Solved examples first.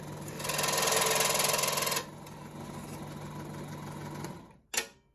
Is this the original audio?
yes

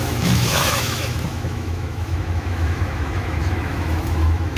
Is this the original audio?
no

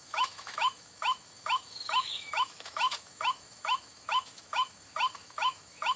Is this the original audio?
no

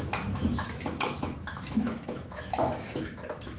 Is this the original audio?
no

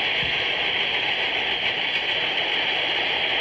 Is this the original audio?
yes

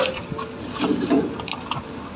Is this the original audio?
yes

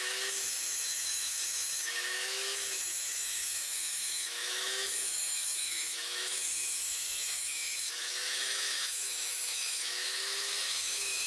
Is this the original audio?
no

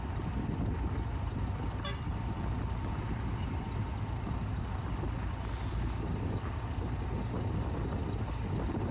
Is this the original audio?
yes